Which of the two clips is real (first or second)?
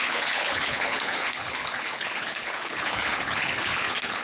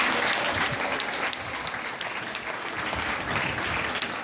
second